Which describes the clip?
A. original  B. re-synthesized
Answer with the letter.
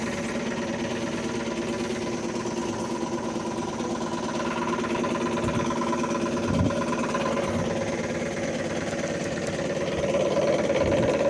A